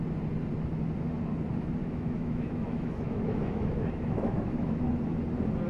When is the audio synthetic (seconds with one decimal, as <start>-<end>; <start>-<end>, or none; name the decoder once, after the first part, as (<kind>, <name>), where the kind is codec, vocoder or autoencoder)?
1.8-5.2 (autoencoder, DAC-VAE)